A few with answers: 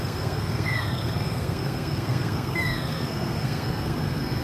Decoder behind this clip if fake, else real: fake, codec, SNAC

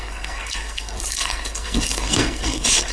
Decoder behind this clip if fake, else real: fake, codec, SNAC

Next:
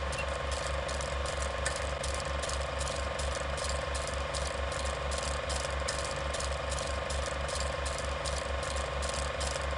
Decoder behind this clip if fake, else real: real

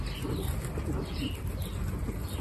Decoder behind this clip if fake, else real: real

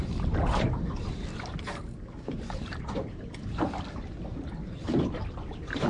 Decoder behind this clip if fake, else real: real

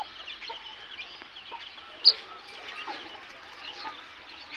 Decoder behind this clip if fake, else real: real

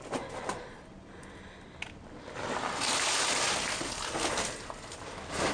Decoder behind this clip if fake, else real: real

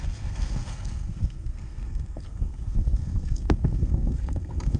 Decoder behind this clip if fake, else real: fake, codec, SNAC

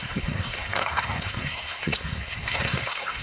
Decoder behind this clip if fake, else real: fake, codec, SNAC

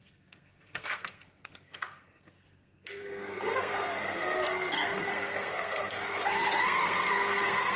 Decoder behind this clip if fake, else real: fake, codec, SNAC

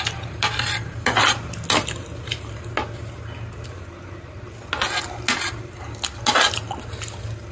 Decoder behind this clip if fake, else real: real